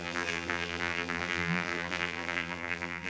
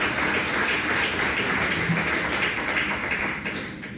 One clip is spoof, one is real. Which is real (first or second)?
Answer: second